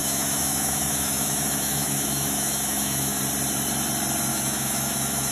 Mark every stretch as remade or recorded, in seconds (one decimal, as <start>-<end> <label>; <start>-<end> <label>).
0.0-3.2 remade; 3.2-4.3 recorded; 4.3-5.3 remade